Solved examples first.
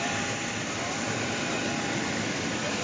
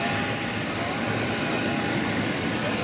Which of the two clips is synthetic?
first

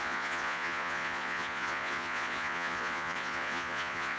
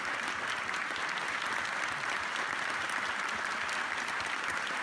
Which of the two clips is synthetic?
first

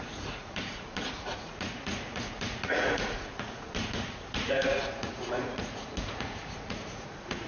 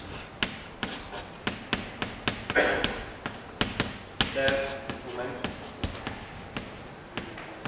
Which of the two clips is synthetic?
first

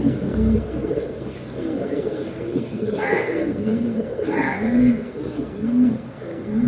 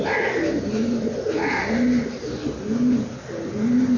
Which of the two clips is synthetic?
first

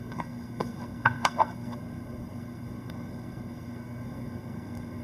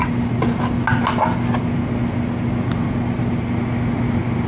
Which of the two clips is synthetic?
first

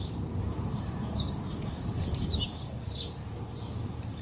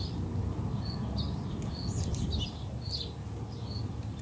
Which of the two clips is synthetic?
first